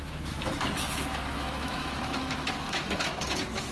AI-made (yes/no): yes